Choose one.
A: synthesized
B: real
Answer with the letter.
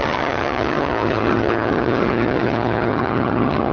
A